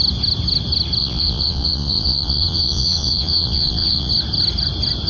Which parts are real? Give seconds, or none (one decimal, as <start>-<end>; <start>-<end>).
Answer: 0.0-1.0; 4.1-5.1